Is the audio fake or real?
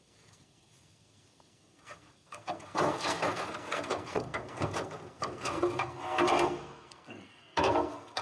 fake